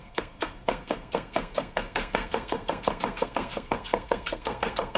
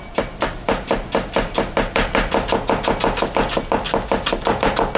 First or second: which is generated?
first